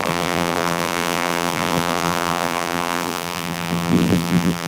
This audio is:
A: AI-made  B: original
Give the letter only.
A